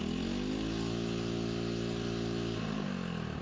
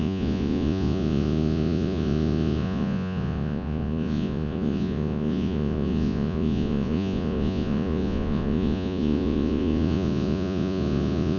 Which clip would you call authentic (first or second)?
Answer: first